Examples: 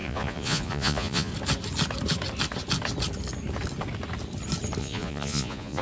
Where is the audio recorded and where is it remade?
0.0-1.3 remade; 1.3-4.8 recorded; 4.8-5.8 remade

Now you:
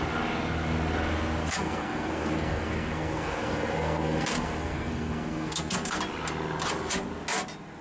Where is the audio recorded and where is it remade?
0.0-1.4 recorded; 1.4-6.0 remade; 6.0-7.8 recorded

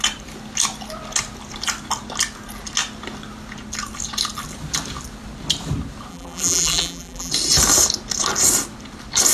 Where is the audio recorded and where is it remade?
0.0-6.1 recorded; 6.1-7.3 remade; 7.3-9.3 recorded

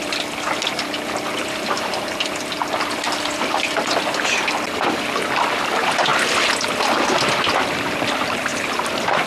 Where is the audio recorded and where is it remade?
0.0-9.3 recorded

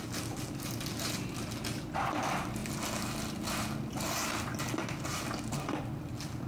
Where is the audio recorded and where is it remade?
0.0-6.5 recorded

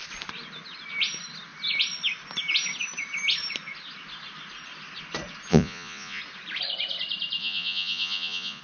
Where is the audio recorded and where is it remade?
0.0-5.5 recorded; 5.5-6.2 remade; 6.2-7.4 recorded; 7.4-8.6 remade

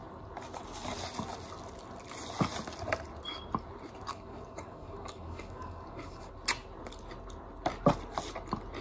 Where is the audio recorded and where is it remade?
0.0-4.1 recorded; 4.1-6.3 remade; 6.3-8.8 recorded

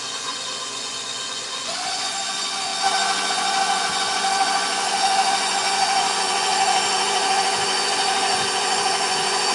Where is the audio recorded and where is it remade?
0.0-2.7 remade; 2.7-3.3 recorded; 3.3-9.5 remade